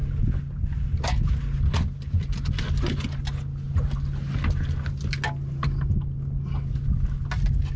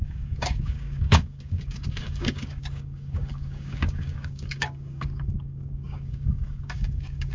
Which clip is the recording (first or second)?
first